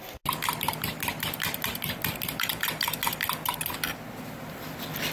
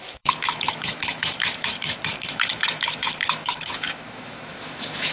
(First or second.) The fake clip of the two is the second